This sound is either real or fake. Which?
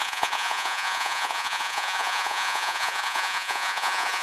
fake